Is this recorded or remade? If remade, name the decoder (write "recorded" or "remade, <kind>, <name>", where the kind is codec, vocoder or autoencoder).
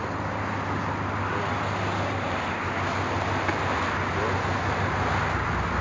recorded